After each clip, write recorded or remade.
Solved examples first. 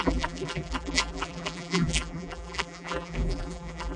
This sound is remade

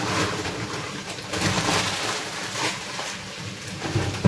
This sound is remade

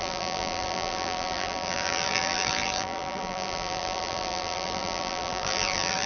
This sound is remade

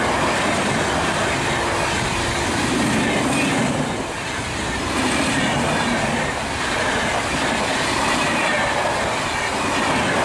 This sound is recorded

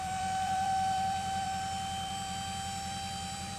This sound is remade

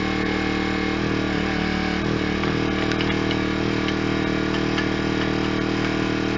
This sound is recorded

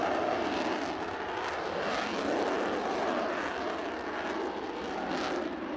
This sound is recorded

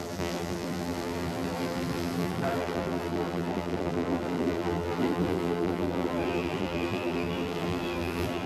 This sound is remade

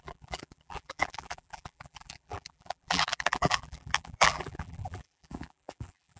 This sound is remade